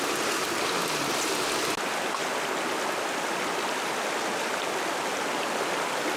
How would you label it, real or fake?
real